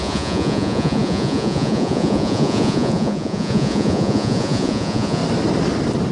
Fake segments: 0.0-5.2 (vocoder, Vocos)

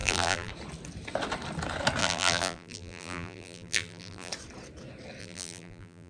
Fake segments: 0.0-0.5 (vocoder, BigVGAN v2); 2.0-4.3; 5.2-6.1

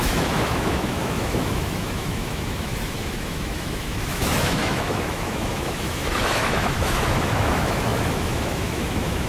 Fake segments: 0.0-9.3 (autoencoder, DAC-VAE)

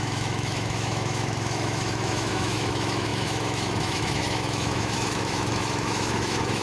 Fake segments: 0.0-6.6 (autoencoder, DAC-VAE)

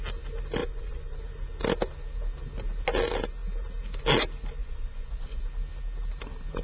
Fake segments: 0.6-1.2 (vocoder, Vocos); 4.6-5.5